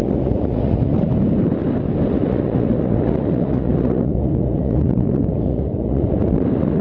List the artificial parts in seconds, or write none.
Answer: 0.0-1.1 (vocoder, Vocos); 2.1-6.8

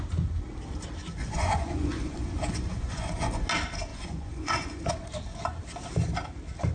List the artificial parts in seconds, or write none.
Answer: 1.2-3.5 (vocoder, Vocos); 3.9-4.9

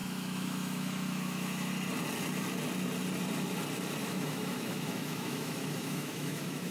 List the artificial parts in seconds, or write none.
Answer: 0.0-1.7 (autoencoder, DAC-VAE); 4.0-6.7